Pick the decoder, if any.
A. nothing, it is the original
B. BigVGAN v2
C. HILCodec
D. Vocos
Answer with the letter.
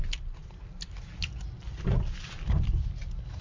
A